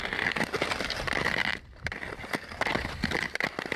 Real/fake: real